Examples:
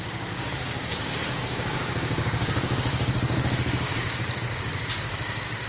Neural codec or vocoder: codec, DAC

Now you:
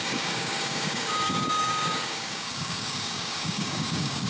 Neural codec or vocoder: codec, DAC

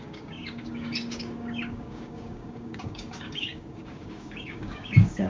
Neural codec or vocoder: codec, DAC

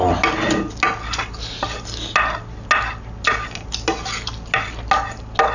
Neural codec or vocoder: none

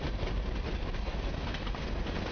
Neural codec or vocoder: none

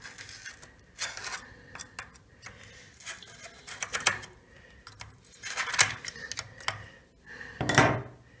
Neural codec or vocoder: none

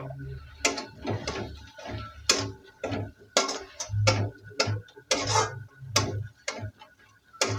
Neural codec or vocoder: none